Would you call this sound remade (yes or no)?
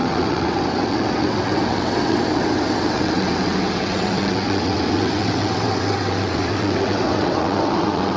yes